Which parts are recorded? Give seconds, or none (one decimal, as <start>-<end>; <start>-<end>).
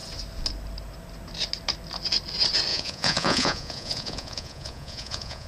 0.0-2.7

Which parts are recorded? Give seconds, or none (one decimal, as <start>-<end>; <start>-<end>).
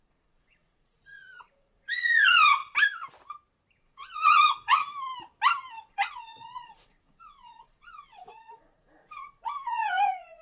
2.6-3.8; 4.8-5.9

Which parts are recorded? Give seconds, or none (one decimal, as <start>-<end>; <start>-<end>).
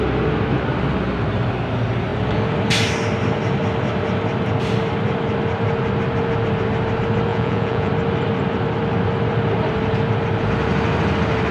0.0-7.3; 7.9-11.5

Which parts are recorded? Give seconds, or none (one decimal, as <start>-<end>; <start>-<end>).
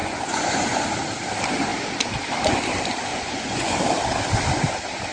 0.8-3.1; 3.8-5.1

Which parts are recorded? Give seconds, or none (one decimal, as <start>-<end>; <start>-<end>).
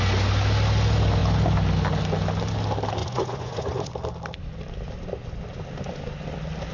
0.0-3.0; 3.9-6.7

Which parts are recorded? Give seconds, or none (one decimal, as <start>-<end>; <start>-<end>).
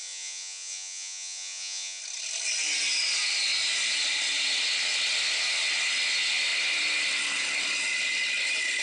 2.0-8.8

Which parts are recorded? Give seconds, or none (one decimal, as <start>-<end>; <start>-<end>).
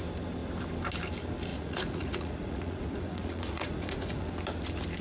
0.0-1.5; 4.2-5.0